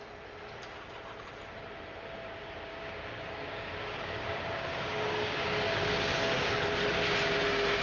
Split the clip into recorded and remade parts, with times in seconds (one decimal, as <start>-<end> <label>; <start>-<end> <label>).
0.0-2.7 recorded; 2.7-6.5 remade; 6.5-7.8 recorded